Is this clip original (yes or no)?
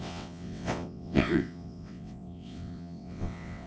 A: no